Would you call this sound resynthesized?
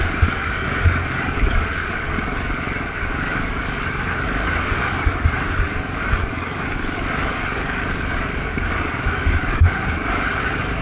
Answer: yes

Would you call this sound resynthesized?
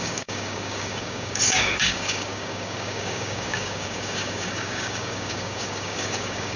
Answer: yes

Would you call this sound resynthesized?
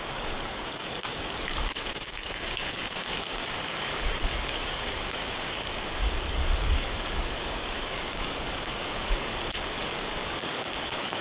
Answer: yes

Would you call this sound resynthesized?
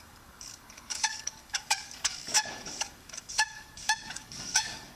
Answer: yes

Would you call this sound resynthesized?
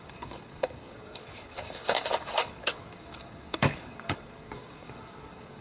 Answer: yes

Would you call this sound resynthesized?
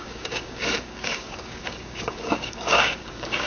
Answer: yes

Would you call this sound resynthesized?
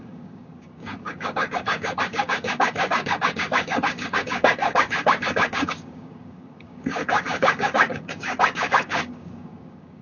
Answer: yes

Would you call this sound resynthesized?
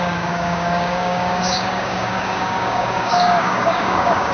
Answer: yes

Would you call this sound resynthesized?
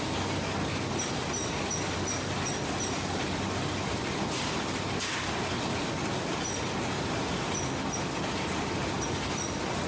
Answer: no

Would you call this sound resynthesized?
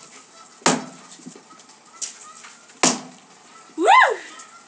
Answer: no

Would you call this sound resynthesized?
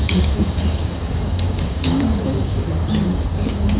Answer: yes